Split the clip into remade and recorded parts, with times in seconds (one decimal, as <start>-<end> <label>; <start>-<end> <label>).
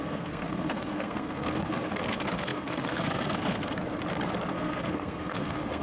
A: 0.0-3.8 remade; 3.8-4.5 recorded; 4.5-5.8 remade